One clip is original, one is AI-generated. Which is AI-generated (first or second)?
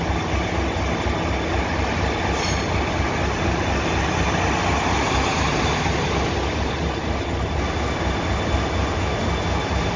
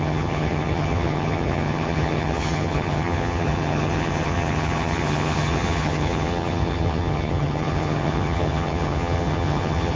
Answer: second